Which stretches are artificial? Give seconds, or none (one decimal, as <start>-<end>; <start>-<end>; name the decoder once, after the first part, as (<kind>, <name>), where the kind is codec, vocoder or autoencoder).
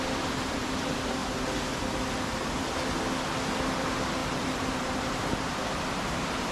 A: 0.0-1.2 (vocoder, BigVGAN v2); 3.8-6.5